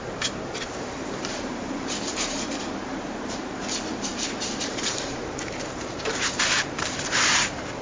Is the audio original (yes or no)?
no